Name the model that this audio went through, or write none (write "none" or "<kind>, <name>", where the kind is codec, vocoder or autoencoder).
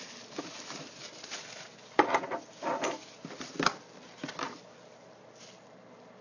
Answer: none